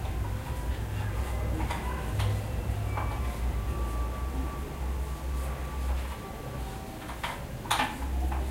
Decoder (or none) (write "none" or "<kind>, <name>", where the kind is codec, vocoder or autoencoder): none